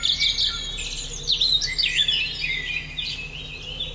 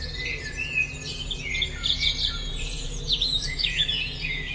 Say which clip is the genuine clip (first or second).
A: first